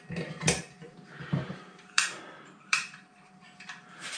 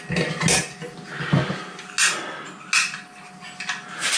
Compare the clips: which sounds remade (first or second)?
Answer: first